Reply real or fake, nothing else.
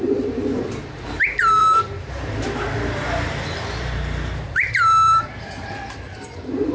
fake